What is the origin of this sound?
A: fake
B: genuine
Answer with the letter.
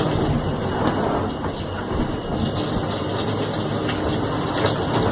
B